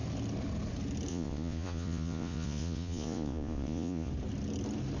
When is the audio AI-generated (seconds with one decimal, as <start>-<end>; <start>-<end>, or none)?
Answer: 1.1-4.1